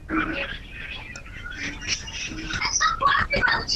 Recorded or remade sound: recorded